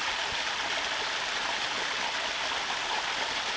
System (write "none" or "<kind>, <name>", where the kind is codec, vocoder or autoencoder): none